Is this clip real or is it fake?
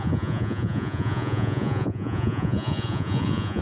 fake